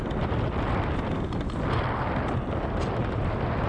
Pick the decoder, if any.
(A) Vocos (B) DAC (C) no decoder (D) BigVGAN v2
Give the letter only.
C